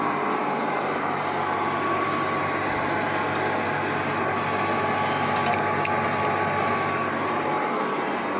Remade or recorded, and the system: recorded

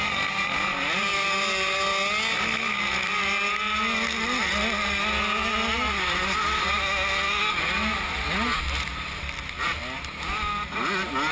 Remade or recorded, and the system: recorded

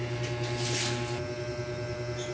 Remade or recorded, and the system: recorded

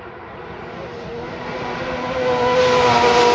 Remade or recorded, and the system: recorded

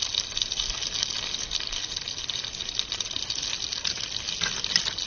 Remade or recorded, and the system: recorded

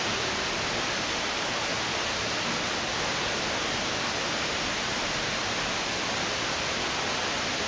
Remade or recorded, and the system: recorded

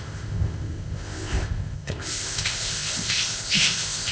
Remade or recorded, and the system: remade, codec, ZipCodec